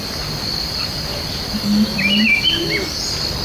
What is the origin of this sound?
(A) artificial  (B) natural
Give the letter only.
B